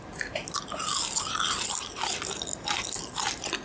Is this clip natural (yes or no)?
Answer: yes